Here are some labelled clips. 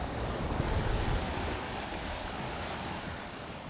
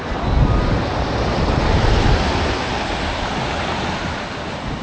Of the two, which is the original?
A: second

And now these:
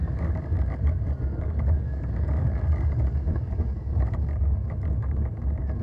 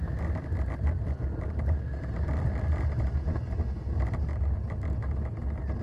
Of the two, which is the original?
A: second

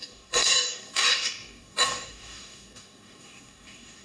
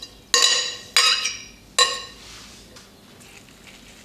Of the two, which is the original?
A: second